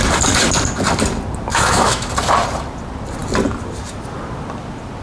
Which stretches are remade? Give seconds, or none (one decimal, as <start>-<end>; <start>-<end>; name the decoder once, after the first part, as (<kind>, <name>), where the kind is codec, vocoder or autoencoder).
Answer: 1.5-2.1 (autoencoder, DAC-VAE)